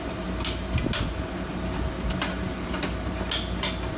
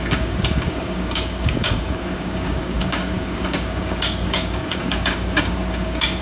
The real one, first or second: first